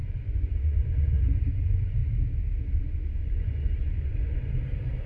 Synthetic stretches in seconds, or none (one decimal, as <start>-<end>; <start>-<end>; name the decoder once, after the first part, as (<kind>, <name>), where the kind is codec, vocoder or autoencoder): 0.0-1.2 (vocoder, Vocos); 3.2-4.5